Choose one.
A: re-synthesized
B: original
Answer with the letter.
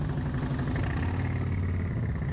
B